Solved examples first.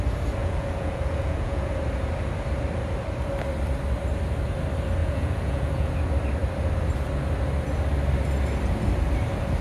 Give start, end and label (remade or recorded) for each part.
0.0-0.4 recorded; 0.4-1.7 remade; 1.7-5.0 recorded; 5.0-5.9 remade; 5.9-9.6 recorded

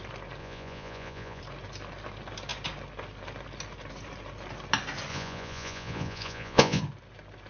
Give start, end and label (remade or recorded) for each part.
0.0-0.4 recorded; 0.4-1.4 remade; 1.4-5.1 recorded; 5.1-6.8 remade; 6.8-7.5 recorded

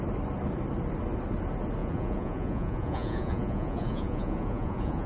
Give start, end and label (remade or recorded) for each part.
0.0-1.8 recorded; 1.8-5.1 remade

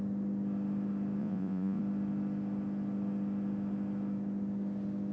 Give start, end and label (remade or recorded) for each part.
0.0-1.2 recorded; 1.2-1.8 remade; 1.8-5.1 recorded

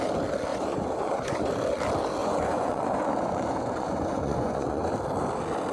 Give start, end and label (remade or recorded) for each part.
0.0-0.5 recorded; 0.5-1.5 remade; 1.5-2.2 recorded; 2.2-4.9 remade; 4.9-5.7 recorded

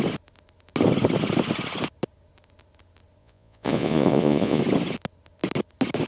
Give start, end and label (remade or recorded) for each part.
0.0-3.2 recorded; 3.2-4.6 remade; 4.6-6.1 recorded

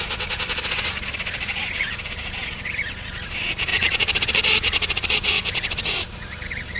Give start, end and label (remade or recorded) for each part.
0.0-6.8 remade